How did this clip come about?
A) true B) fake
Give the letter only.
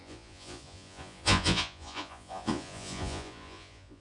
B